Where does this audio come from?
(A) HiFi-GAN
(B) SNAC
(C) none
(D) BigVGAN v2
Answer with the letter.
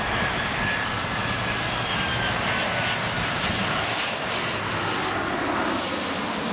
C